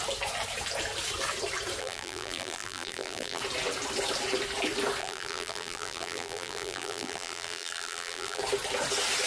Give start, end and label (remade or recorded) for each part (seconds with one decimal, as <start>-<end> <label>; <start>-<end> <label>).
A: 0.0-1.8 recorded; 1.8-3.4 remade; 3.4-5.0 recorded; 5.0-8.4 remade; 8.4-9.3 recorded